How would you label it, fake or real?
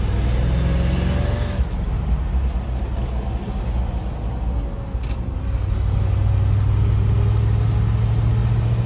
real